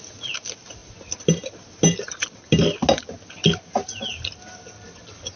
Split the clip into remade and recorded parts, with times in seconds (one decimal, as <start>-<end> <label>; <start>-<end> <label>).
0.0-5.4 recorded